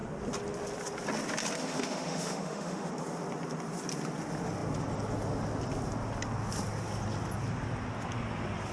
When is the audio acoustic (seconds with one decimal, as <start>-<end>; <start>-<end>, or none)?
0.0-1.6; 2.9-8.7